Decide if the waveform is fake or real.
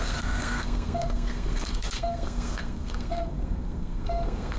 fake